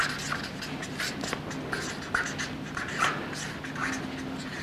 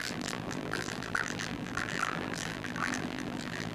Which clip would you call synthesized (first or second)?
second